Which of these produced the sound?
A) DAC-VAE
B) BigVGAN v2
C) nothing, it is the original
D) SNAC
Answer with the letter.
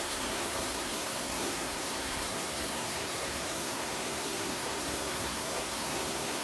D